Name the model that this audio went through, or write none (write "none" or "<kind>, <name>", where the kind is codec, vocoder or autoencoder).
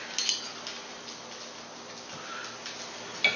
none